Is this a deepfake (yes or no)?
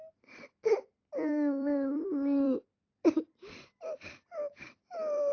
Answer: yes